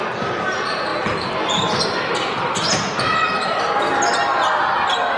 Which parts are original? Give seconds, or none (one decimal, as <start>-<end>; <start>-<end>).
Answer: 0.0-5.2